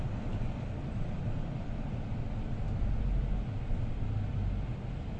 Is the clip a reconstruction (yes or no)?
no